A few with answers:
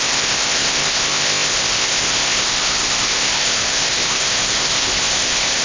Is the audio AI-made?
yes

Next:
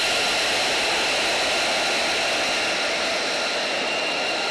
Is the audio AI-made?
no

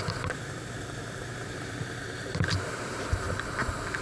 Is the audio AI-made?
yes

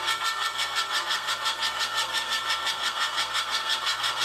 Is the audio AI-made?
yes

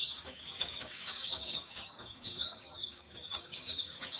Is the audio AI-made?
yes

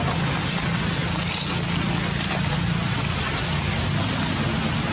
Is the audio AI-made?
no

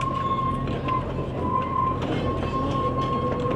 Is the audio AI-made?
no